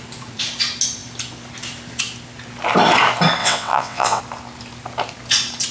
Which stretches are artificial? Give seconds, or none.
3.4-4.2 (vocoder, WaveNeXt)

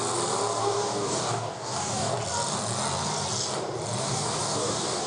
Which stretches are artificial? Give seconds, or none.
0.6-2.1 (codec, DAC); 4.0-5.1

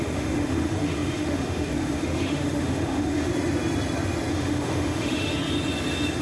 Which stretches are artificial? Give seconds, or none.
0.0-3.3 (autoencoder, DAC-VAE); 4.3-5.3

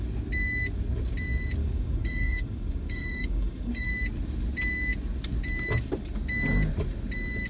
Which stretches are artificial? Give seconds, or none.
1.6-3.9 (codec, DAC)